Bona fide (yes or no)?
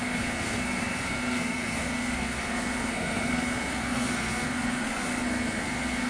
no